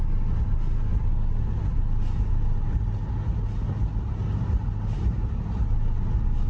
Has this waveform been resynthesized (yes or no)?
no